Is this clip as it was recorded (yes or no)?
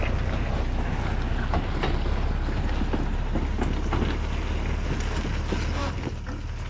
yes